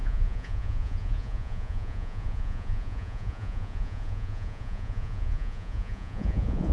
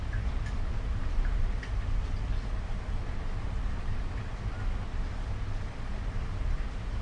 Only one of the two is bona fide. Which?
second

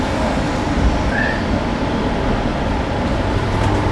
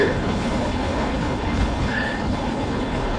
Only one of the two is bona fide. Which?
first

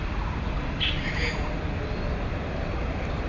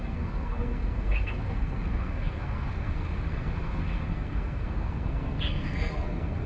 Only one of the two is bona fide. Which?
first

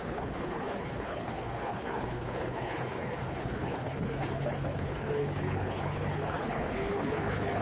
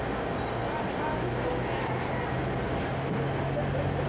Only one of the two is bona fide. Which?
second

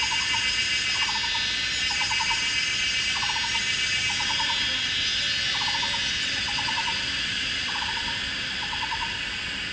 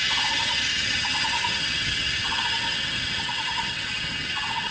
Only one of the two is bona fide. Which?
first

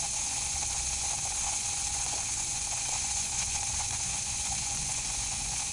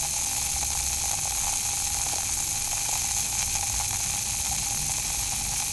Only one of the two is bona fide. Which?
second